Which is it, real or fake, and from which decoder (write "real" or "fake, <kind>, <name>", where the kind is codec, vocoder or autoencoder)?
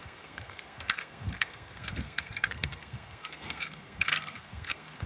fake, codec, SNAC